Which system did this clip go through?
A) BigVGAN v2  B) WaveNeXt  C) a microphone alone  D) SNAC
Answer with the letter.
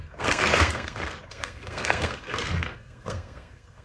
D